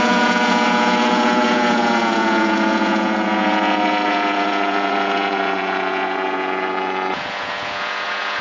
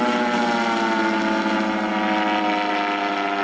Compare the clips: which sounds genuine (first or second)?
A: second